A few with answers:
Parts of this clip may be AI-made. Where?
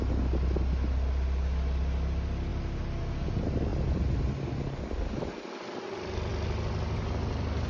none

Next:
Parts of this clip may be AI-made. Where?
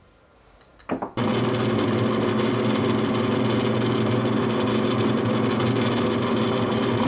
none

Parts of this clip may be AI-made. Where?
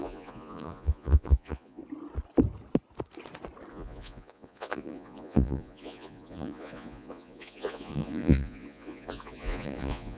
0.0-1.8 (vocoder, Vocos); 3.7-10.2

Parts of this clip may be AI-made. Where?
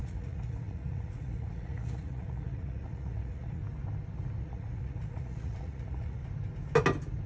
0.0-3.6 (vocoder, Vocos); 4.4-6.2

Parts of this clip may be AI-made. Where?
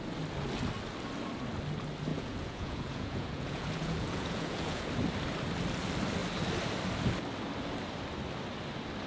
2.1-4.9 (vocoder, Vocos)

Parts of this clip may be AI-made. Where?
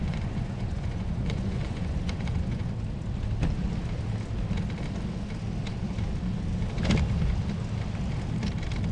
0.0-2.7 (vocoder, Vocos)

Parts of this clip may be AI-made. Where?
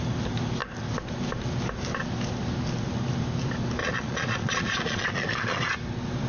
3.8-5.6 (vocoder, Vocos)